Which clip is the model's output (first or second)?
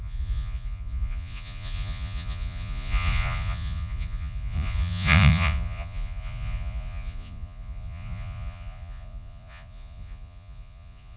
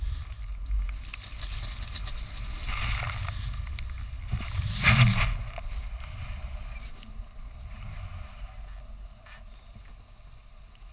first